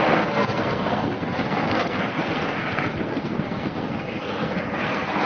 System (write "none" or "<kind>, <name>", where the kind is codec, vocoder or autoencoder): codec, SNAC